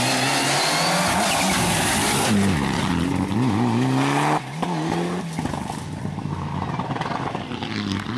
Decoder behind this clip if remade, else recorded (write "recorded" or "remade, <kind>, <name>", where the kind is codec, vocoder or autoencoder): recorded